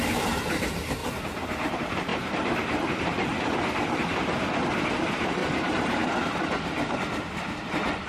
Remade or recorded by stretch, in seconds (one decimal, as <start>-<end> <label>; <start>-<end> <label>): 0.0-1.0 remade; 1.0-1.7 recorded; 1.7-3.3 remade; 3.3-4.9 recorded; 4.9-5.4 remade; 5.4-7.5 recorded; 7.5-8.1 remade